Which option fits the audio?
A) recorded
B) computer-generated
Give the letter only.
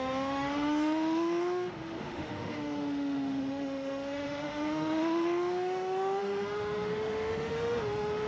B